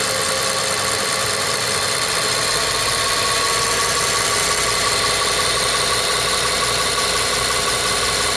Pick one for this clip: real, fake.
real